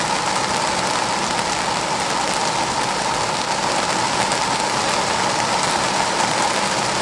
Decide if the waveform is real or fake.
real